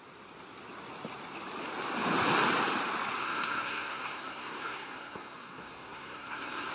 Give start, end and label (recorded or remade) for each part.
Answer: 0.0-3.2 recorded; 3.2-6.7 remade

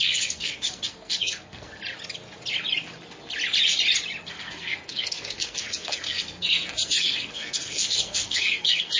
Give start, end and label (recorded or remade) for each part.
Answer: 0.0-1.7 remade; 1.7-4.2 recorded; 4.2-9.0 remade

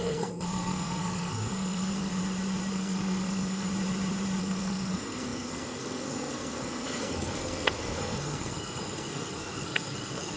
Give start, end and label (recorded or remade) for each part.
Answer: 0.0-2.1 remade; 2.1-2.7 recorded; 2.7-3.7 remade; 3.7-4.4 recorded; 4.4-10.4 remade

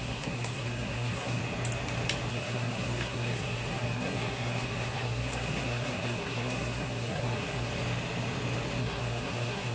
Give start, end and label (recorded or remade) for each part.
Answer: 0.0-1.4 remade; 1.4-2.3 recorded; 2.3-7.7 remade; 7.7-8.8 recorded; 8.8-9.7 remade

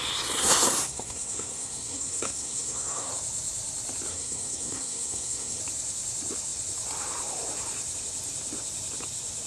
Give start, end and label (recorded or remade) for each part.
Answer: 0.0-0.4 recorded; 0.4-3.1 remade; 3.1-4.1 recorded; 4.1-5.6 remade; 5.6-9.5 recorded